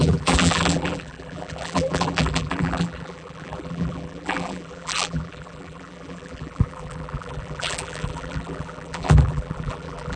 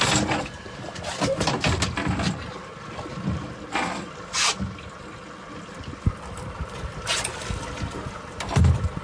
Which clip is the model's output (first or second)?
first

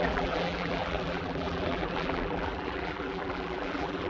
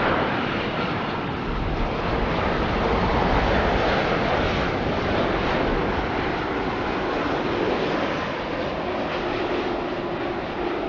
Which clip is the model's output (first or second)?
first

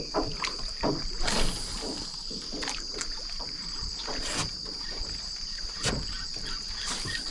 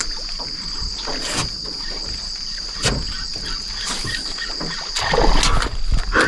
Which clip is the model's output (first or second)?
first